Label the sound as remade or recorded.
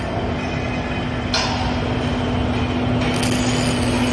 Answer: recorded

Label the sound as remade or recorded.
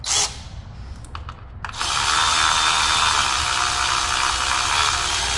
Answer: recorded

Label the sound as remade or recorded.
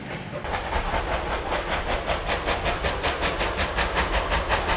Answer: recorded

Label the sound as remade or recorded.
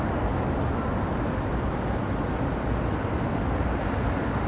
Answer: recorded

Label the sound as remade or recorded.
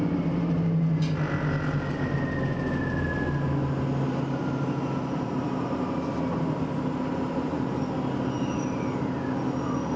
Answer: recorded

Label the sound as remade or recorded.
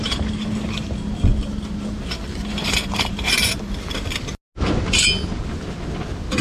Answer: recorded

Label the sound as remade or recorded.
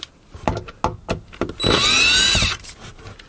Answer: recorded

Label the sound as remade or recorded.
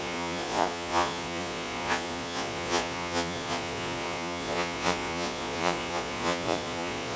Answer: remade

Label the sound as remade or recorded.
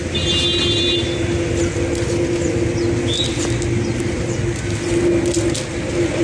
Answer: recorded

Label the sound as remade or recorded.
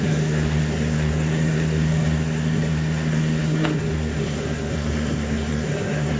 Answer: remade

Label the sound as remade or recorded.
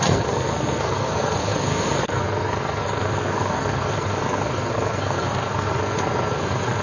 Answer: remade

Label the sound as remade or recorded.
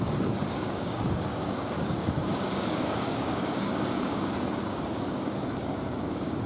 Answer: remade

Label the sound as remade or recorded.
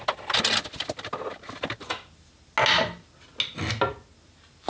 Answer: recorded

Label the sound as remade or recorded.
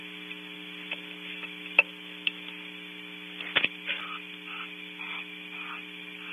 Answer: recorded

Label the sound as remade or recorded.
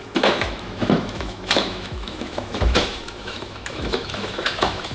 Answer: remade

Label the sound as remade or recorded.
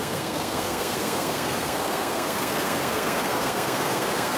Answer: remade